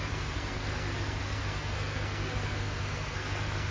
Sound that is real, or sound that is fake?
fake